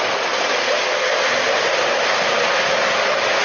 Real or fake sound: real